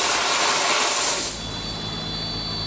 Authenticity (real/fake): real